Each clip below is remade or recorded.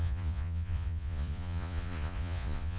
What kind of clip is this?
remade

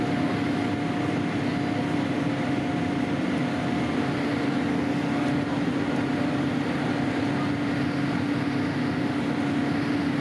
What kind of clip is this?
recorded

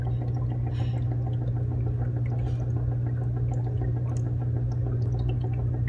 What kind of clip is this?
recorded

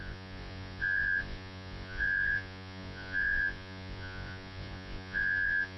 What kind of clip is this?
remade